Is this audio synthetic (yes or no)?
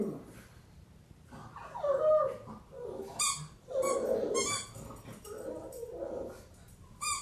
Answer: no